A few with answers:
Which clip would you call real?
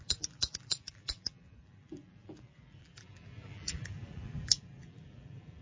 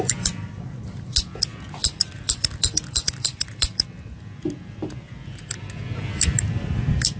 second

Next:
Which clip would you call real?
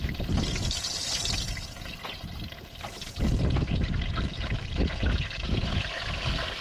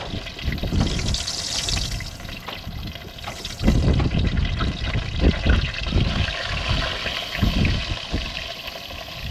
second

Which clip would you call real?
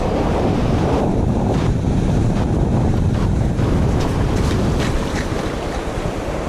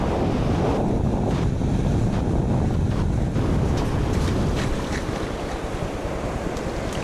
second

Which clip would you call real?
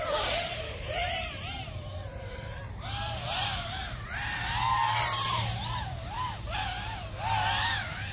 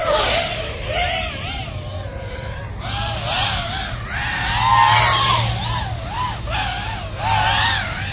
second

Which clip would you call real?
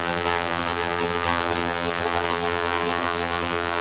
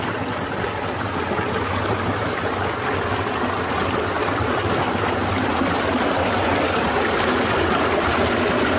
second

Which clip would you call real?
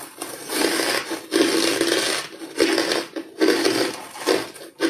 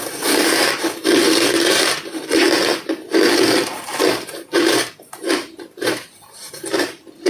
first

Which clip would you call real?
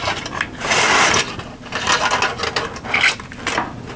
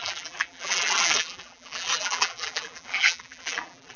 first